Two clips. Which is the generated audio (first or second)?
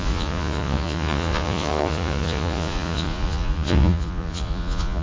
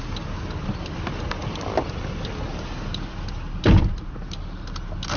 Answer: first